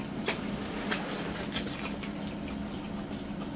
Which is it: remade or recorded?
recorded